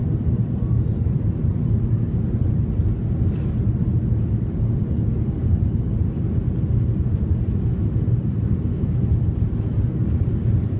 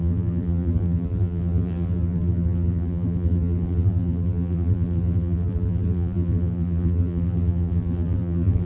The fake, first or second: second